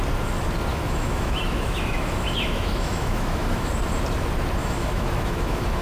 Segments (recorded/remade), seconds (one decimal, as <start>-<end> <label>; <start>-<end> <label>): 0.0-0.7 recorded; 0.7-3.7 remade; 3.7-4.6 recorded; 4.6-5.8 remade